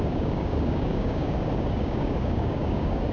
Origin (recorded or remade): remade